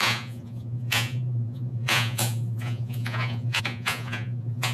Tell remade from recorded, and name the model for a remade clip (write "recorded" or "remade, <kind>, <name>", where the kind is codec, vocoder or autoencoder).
remade, vocoder, Vocos